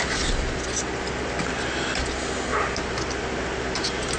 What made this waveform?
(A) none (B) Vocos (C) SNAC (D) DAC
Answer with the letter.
A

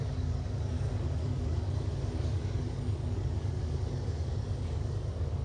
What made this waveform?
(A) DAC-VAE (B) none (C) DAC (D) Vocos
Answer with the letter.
C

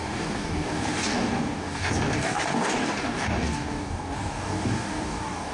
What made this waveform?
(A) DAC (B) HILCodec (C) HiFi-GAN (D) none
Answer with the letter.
A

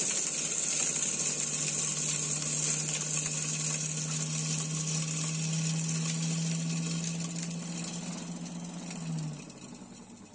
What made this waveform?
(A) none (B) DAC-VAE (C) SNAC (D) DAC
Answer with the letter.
A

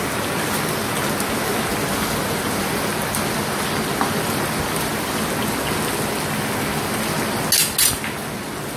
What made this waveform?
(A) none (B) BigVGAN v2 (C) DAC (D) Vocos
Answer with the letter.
A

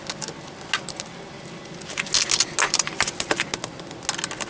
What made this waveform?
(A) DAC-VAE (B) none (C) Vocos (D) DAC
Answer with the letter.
B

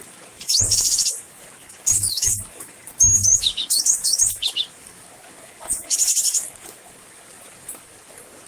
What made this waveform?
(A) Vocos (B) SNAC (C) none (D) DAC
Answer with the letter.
D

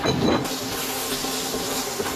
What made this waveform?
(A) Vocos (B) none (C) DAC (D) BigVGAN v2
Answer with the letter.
B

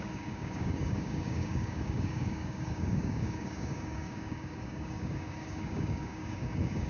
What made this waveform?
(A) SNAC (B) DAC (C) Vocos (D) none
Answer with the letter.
B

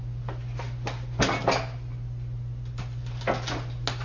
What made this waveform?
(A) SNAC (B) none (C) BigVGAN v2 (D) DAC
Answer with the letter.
B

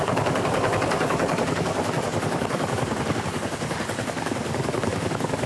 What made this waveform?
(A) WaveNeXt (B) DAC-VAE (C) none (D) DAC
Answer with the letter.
D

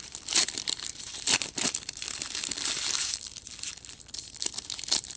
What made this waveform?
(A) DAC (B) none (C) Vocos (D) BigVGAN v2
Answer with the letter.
B